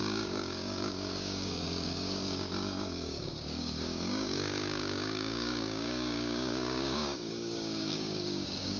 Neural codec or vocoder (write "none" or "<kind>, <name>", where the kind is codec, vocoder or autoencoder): codec, DAC